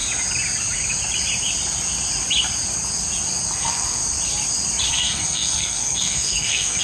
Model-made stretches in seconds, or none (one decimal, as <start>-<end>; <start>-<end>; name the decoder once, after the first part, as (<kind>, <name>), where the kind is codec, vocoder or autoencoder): 3.6-4.0 (codec, SNAC); 4.9-6.8